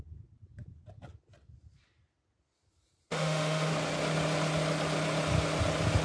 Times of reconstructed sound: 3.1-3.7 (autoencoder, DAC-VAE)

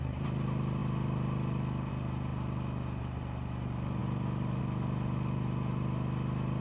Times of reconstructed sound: none

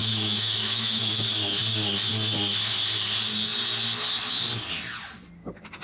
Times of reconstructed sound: 0.0-1.2 (autoencoder, DAC-VAE)

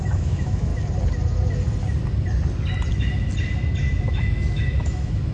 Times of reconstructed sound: 0.0-0.7 (autoencoder, DAC-VAE); 2.9-3.3; 4.1-5.3